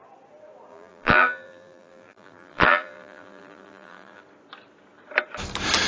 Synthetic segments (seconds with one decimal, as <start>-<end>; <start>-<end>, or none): 0.7-4.2